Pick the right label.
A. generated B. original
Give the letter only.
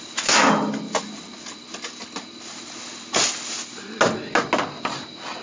B